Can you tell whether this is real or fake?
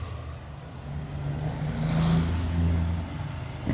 real